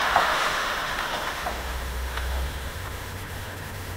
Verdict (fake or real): fake